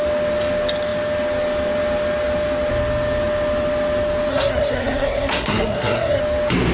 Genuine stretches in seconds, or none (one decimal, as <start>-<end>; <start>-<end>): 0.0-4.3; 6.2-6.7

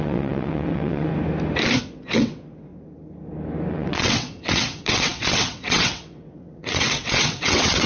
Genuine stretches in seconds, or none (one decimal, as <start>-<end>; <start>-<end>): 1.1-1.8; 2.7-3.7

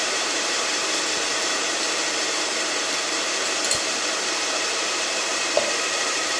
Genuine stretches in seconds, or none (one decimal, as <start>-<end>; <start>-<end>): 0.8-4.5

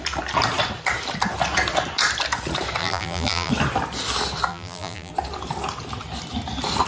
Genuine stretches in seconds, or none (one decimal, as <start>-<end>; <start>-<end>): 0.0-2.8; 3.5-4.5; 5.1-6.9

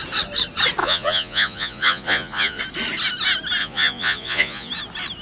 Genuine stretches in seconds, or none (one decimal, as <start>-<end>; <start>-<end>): 0.0-0.8; 2.6-3.6; 4.7-5.2